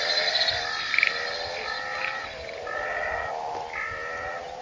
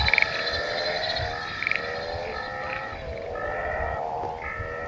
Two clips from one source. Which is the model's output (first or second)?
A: first